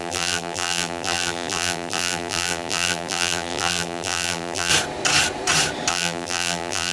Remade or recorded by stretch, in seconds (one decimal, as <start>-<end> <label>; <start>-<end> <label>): 0.0-4.7 remade; 4.7-5.9 recorded; 5.9-6.9 remade